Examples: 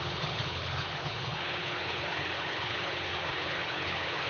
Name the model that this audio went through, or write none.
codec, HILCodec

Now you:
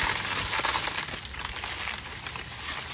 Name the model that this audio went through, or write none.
none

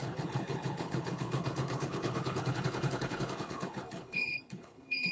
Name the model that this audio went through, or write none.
codec, HILCodec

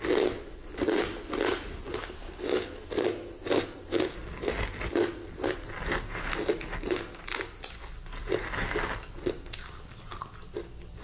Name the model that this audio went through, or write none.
none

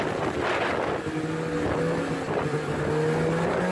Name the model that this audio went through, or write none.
none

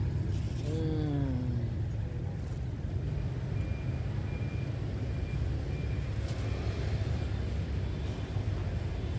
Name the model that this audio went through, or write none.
none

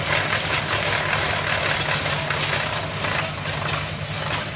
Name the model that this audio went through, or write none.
none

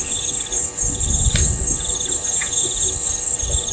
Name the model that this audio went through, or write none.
none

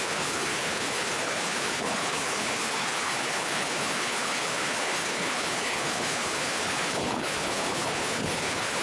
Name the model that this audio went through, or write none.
codec, HILCodec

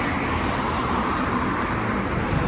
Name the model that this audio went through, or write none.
none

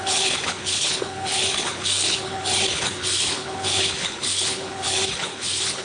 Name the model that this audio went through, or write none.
codec, HILCodec